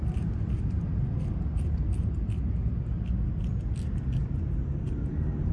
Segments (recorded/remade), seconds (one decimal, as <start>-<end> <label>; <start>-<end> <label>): 0.0-4.2 recorded; 4.2-5.5 remade